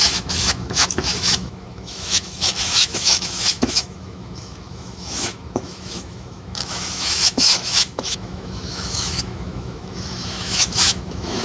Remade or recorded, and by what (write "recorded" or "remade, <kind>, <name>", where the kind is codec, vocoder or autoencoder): remade, autoencoder, DAC-VAE